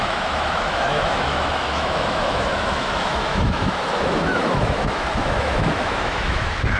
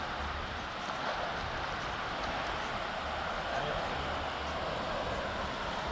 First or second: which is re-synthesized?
first